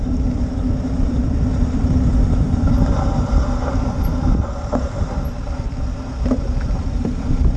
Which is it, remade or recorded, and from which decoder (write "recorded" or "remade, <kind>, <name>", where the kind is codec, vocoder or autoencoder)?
remade, vocoder, BigVGAN v2